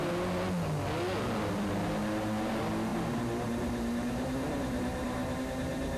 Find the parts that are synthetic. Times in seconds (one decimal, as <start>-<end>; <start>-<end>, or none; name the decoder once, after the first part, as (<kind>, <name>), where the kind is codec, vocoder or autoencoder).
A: 2.9-5.4 (vocoder, BigVGAN v2)